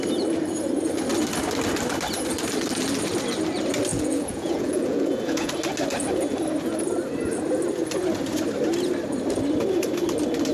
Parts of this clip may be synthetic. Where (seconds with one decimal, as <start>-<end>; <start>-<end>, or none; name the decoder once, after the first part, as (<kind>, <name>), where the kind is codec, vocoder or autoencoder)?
3.9-5.5 (vocoder, Vocos)